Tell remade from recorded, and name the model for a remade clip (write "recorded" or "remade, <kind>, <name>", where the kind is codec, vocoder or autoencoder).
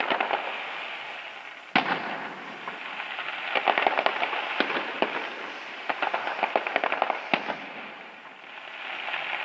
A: recorded